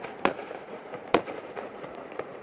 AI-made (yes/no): yes